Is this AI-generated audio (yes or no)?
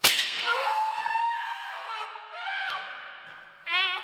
yes